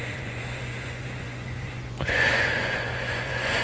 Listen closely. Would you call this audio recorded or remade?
remade